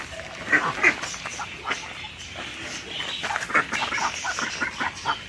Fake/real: real